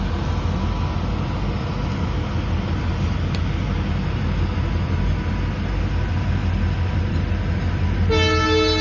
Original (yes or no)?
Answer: yes